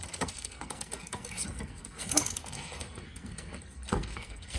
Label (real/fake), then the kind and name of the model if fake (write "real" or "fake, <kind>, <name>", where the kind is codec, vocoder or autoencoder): fake, codec, SNAC